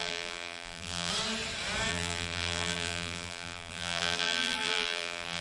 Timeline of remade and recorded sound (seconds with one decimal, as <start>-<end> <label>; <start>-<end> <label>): 0.0-1.1 remade; 1.1-1.9 recorded; 1.9-5.4 remade